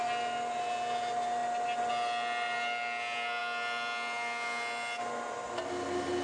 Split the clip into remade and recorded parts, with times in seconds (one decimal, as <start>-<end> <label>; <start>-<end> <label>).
0.0-6.2 recorded